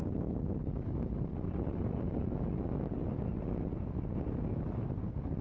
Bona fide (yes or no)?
yes